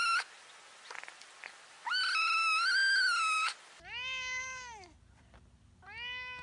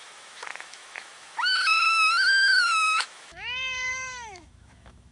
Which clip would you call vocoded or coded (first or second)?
second